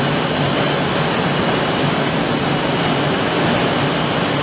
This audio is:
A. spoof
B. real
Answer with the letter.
B